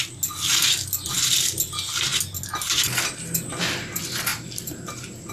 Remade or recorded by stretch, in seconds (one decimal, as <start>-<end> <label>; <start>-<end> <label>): 0.0-4.3 recorded; 4.3-5.3 remade